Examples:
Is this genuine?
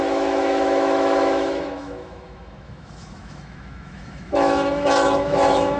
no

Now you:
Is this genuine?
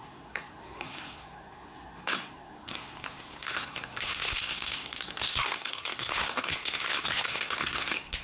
no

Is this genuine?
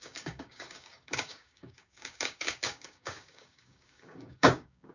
no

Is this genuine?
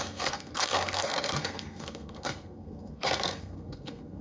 no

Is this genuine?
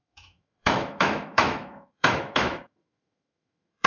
no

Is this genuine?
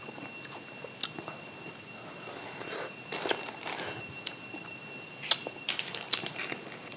yes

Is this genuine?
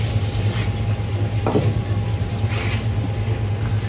yes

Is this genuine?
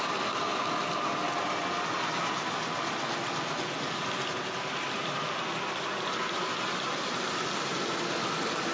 yes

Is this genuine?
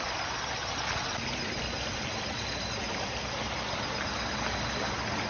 yes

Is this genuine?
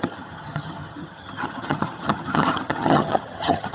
no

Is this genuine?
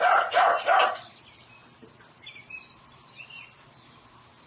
yes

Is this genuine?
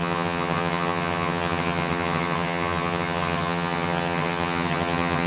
no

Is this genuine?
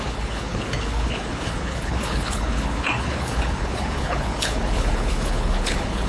no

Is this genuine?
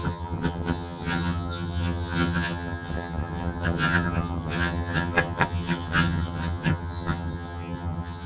no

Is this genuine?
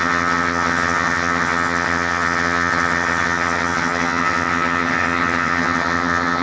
no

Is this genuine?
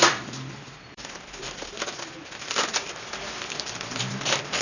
no